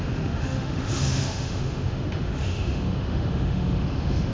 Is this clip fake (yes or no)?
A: yes